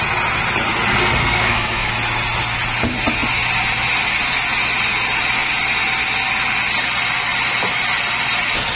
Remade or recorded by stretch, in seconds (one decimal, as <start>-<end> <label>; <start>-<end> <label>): 0.0-1.2 recorded; 1.2-1.9 remade; 1.9-8.8 recorded